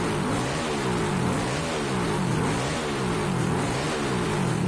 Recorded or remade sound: recorded